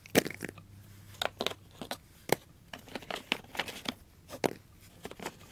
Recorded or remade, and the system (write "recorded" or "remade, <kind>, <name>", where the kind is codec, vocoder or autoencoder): recorded